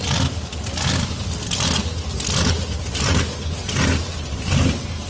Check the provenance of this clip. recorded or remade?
recorded